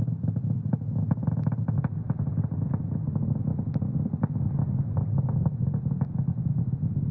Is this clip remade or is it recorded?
recorded